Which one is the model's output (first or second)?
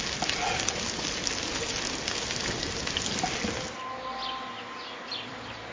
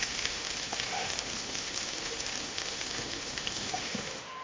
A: second